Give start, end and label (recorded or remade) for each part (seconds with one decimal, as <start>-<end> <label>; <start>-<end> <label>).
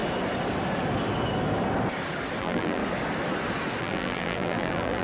0.0-2.4 recorded; 2.4-2.8 remade; 2.8-3.8 recorded; 3.8-5.0 remade